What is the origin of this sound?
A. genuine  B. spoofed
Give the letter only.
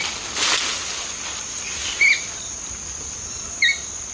A